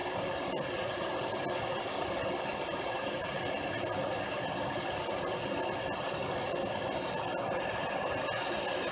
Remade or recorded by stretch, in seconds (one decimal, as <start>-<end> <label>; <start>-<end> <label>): 0.0-8.9 recorded